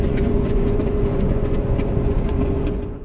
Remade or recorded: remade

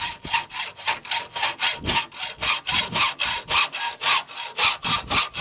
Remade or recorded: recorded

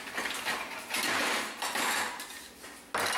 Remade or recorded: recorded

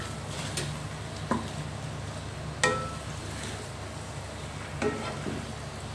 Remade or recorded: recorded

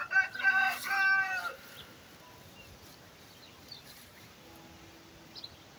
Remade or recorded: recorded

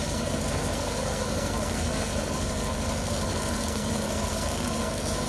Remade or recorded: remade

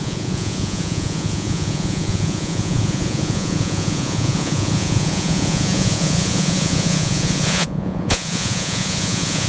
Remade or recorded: remade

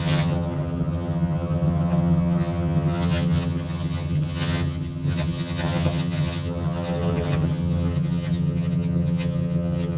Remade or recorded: remade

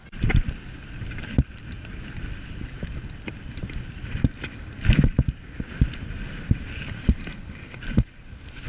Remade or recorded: recorded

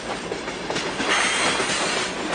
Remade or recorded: recorded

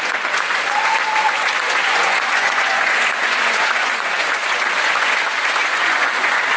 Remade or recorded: remade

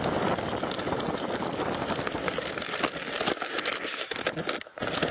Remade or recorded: recorded